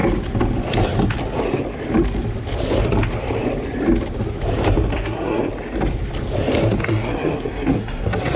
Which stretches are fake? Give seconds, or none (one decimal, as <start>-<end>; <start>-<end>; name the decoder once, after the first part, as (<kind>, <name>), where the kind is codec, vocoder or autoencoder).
4.9-5.5 (codec, SNAC); 6.8-8.4